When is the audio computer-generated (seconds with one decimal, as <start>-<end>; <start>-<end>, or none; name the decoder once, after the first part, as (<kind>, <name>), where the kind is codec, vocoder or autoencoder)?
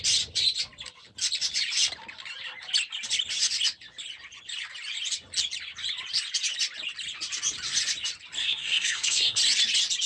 8.4-9.4 (codec, SNAC)